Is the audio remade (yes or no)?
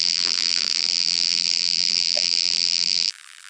yes